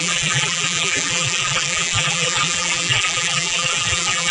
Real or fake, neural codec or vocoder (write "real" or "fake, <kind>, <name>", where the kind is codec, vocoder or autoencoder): fake, vocoder, BigVGAN v2